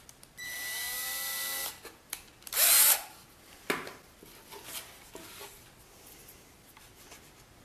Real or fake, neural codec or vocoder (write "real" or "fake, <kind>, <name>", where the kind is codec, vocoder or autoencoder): real